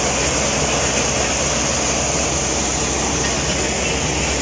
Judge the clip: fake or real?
real